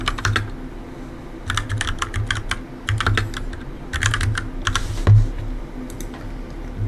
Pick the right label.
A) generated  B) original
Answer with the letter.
B